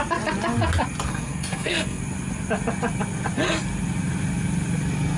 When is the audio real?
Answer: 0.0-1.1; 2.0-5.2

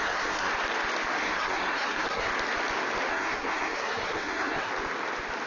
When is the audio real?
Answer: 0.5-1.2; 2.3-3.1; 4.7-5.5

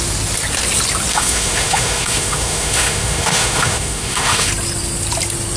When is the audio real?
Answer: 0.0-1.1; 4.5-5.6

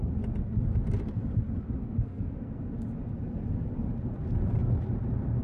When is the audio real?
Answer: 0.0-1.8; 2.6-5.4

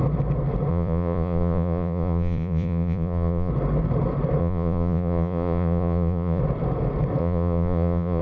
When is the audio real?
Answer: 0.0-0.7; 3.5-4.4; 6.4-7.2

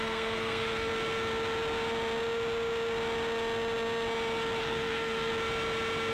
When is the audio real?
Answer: 0.9-4.6; 5.3-6.1